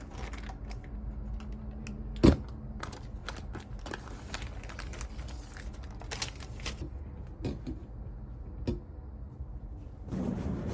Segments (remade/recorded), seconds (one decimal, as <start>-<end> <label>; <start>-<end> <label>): 0.0-10.7 recorded